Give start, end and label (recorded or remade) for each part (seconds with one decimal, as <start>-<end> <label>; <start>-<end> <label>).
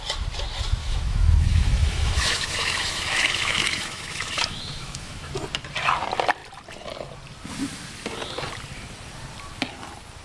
0.0-0.8 recorded; 0.8-5.3 remade; 5.3-10.2 recorded